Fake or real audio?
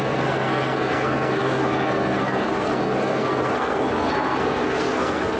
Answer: fake